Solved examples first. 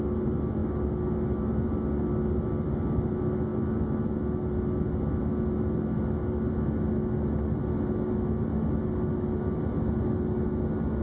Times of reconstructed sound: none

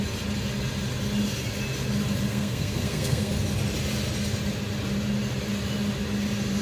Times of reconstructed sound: 2.3-3.3

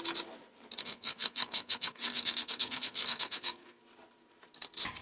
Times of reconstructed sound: 0.8-3.8

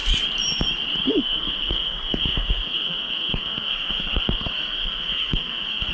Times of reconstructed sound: 1.1-5.9